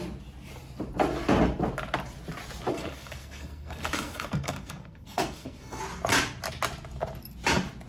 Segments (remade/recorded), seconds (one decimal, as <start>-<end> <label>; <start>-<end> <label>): 0.0-2.7 recorded; 2.7-5.8 remade; 5.8-7.9 recorded